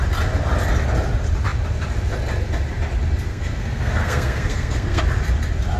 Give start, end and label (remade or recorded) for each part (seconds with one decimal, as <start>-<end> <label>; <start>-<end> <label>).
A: 0.0-3.3 recorded; 3.3-5.0 remade; 5.0-5.8 recorded